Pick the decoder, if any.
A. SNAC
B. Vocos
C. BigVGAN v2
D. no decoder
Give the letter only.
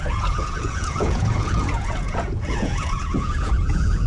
B